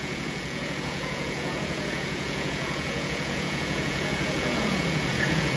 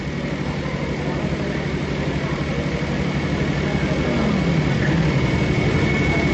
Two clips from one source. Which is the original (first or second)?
second